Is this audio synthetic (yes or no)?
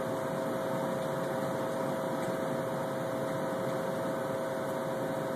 no